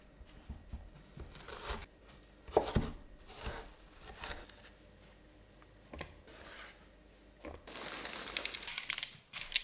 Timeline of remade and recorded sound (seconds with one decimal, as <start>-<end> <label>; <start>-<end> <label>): 0.0-9.6 recorded